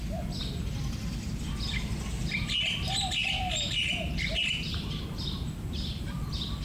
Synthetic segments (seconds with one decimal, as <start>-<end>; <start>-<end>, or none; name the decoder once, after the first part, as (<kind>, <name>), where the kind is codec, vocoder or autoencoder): 4.7-6.0 (vocoder, BigVGAN v2)